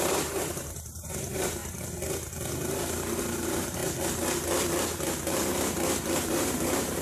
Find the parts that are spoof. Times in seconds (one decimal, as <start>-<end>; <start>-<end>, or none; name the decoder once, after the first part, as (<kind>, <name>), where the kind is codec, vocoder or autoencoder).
0.0-1.6 (vocoder, BigVGAN v2); 3.2-3.8; 6.3-7.0